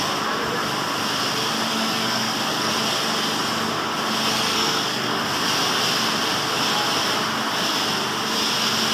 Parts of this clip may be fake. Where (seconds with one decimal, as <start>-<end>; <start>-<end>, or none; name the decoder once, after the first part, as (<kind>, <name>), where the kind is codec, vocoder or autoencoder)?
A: 1.7-2.7 (codec, SNAC); 4.3-5.2